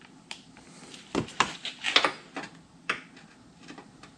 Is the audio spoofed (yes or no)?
yes